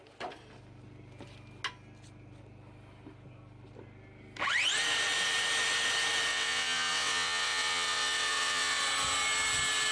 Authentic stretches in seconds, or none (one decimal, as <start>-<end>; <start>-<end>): 0.0-6.3; 8.8-9.9